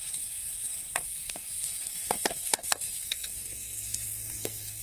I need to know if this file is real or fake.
fake